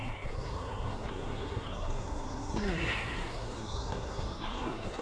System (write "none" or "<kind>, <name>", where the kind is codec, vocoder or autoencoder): codec, SNAC